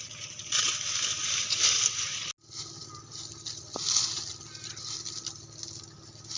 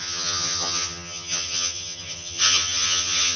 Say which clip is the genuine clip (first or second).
first